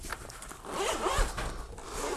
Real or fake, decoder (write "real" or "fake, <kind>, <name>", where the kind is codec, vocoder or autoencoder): real